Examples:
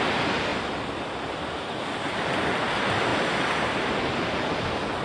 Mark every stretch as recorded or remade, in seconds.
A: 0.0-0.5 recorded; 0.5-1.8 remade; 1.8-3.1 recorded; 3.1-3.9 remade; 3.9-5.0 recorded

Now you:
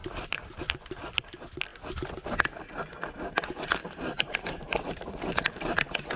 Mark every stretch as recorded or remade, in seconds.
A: 0.0-0.6 remade; 0.6-3.8 recorded; 3.8-5.8 remade; 5.8-6.2 recorded

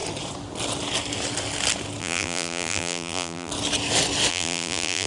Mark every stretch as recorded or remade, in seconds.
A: 0.0-2.0 recorded; 2.0-3.5 remade; 3.5-4.3 recorded; 4.3-5.1 remade

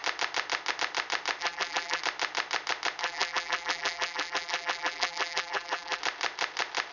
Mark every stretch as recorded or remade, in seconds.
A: 0.0-1.4 recorded; 1.4-2.0 remade; 2.0-3.0 recorded; 3.0-6.0 remade; 6.0-6.9 recorded

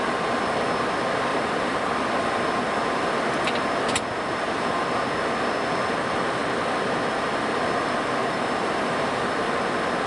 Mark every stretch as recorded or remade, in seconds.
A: 0.0-1.3 recorded; 1.3-1.9 remade; 1.9-8.2 recorded; 8.2-9.5 remade; 9.5-10.1 recorded